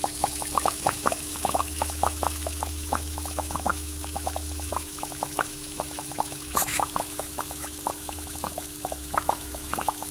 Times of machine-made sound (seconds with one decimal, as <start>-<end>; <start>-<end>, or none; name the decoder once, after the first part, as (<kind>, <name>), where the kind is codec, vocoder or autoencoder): 0.0-10.1 (autoencoder, DAC-VAE)